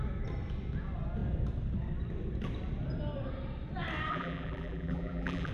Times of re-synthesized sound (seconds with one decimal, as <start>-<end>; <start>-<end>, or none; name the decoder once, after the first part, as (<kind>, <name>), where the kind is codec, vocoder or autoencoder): 4.1-5.5 (vocoder, BigVGAN v2)